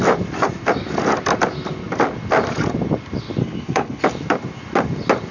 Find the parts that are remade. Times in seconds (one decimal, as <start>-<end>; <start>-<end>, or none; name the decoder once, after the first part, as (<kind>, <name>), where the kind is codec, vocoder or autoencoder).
3.4-4.0 (codec, HILCodec)